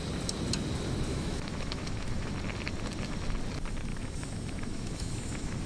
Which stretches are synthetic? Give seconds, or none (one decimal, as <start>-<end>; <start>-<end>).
1.1-2.3; 3.9-5.7